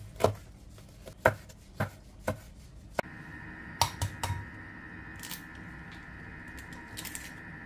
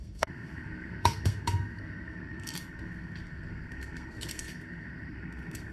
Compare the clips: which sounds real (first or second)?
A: first